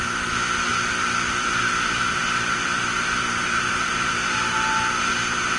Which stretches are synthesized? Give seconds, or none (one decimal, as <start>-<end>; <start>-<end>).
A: 0.7-4.1